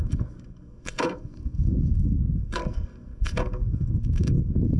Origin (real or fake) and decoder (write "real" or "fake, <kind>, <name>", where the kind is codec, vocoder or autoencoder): fake, codec, SNAC